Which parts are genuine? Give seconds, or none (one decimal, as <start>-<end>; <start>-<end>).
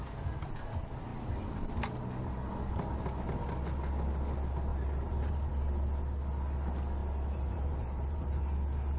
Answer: 0.0-4.7; 5.5-7.0; 8.4-9.0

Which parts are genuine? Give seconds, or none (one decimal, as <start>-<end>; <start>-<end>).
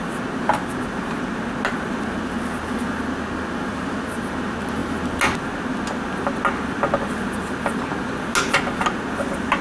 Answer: 0.0-9.6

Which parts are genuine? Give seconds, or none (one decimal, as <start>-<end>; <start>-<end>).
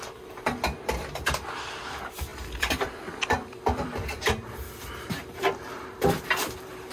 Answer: none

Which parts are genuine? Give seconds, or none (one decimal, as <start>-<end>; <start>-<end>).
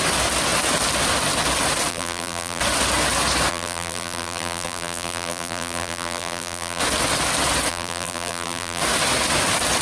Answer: 0.0-1.9; 2.6-3.5; 6.8-7.7; 8.8-9.8